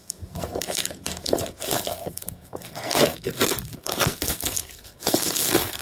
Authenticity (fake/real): fake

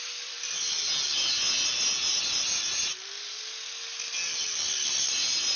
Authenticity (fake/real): real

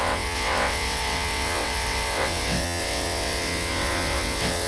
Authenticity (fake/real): fake